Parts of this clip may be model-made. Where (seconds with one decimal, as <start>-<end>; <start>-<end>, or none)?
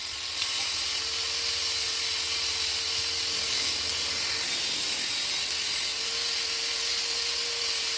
none